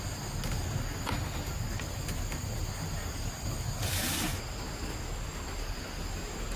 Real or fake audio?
real